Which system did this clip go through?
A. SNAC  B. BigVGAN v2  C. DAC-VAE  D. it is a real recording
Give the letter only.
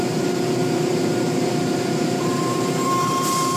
B